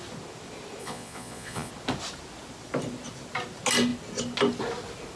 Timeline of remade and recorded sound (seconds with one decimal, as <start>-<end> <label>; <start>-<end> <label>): 0.0-0.8 recorded; 0.8-1.7 remade; 1.7-5.2 recorded